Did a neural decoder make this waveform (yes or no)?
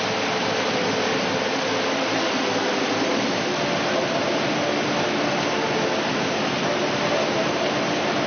no